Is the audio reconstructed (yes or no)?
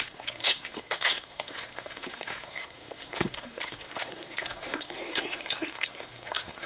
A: yes